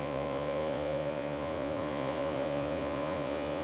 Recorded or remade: remade